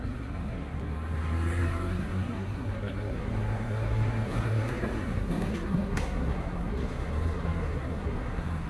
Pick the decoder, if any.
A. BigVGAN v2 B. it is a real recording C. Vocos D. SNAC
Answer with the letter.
D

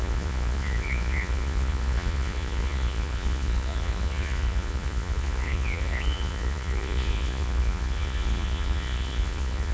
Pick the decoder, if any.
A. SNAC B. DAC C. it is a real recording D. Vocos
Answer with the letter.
D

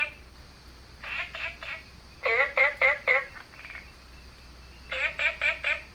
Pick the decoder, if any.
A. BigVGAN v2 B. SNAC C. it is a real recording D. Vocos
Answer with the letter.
C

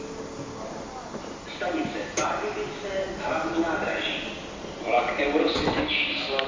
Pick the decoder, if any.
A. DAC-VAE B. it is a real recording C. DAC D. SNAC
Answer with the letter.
B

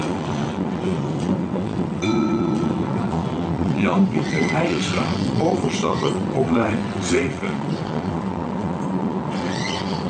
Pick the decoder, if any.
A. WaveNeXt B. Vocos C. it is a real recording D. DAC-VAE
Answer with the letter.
A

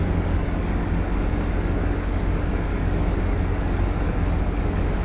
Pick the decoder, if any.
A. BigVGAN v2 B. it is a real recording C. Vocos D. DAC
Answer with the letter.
D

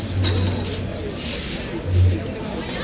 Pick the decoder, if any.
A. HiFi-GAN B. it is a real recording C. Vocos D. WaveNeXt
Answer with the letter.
B